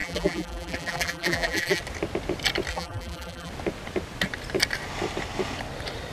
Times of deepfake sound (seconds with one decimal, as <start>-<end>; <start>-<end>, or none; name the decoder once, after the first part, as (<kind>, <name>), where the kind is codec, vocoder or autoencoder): 0.0-1.8 (vocoder, BigVGAN v2); 2.7-3.5